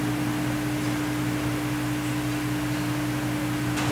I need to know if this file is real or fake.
real